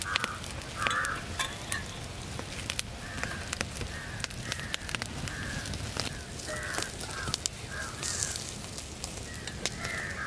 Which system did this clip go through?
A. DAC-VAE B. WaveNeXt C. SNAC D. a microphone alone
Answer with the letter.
D